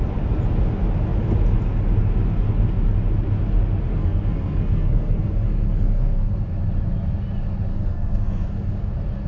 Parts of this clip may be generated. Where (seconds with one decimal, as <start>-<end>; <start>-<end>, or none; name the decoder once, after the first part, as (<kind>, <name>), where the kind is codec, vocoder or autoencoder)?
3.9-6.4 (codec, SNAC); 7.7-8.9